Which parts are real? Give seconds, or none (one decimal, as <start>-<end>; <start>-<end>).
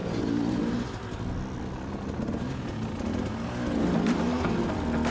0.0-5.1